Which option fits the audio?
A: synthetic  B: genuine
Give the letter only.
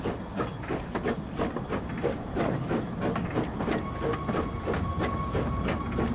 B